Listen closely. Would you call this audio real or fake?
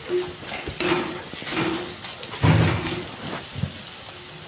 real